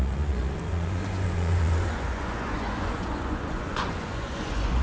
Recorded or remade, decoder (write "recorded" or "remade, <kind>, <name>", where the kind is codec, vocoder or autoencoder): remade, vocoder, Vocos